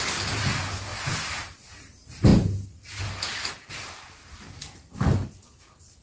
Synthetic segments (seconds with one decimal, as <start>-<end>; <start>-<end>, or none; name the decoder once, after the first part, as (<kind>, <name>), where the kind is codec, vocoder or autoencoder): none